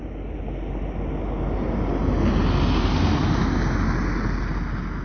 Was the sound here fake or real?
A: real